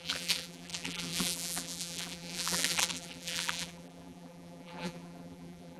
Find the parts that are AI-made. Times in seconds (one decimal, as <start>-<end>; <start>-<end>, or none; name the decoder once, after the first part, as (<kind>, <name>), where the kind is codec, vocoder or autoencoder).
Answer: 0.0-5.8 (vocoder, BigVGAN v2)